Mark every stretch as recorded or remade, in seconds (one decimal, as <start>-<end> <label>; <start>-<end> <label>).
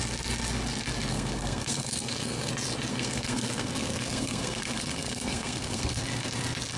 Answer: 0.0-1.1 recorded; 1.1-2.5 remade; 2.5-2.9 recorded; 2.9-6.0 remade; 6.0-6.8 recorded